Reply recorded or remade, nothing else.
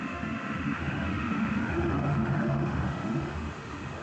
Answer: remade